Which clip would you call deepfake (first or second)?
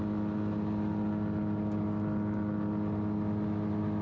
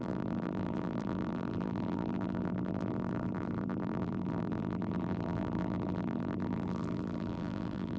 second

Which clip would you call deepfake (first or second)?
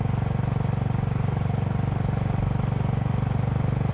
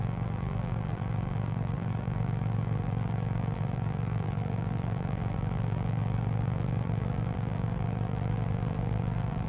second